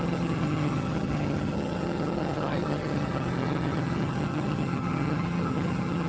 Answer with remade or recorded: remade